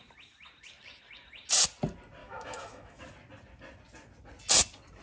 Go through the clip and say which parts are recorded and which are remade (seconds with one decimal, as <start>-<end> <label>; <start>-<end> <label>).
0.0-2.2 recorded; 2.2-3.0 remade; 3.0-5.0 recorded